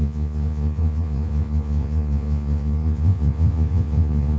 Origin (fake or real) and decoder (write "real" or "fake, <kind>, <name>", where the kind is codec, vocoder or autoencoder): fake, vocoder, Vocos